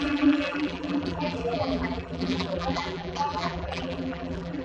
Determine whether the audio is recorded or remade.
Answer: remade